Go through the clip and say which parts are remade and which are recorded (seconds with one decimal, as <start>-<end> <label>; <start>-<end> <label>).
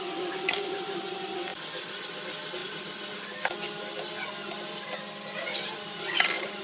0.0-6.6 recorded